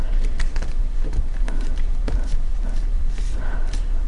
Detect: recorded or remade remade